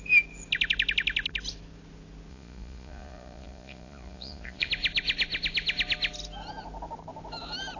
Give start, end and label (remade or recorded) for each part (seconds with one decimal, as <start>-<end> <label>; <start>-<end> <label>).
0.0-2.3 recorded; 2.3-4.7 remade; 4.7-7.8 recorded